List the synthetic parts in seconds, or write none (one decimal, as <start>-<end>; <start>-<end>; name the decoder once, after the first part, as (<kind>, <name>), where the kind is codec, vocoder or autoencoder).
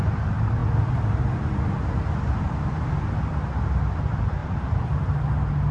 4.4-5.0 (vocoder, BigVGAN v2)